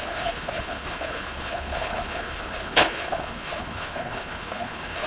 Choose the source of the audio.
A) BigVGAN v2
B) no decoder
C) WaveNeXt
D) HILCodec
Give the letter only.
D